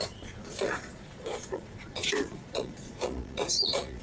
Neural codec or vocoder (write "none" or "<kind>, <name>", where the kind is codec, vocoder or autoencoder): vocoder, Vocos